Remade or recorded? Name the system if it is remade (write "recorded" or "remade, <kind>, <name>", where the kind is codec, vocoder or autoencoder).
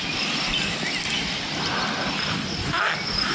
recorded